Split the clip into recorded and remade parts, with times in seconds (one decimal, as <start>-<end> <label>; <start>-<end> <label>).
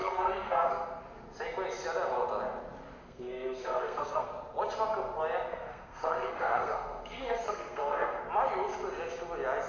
0.0-0.7 remade; 0.7-3.0 recorded; 3.0-4.3 remade; 4.3-5.5 recorded; 5.5-8.2 remade; 8.2-9.7 recorded